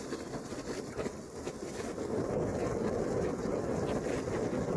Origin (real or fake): real